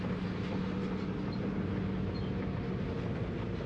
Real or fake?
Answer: real